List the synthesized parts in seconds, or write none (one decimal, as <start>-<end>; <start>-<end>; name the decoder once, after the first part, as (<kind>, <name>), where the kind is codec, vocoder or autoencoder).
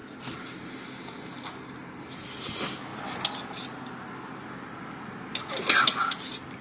none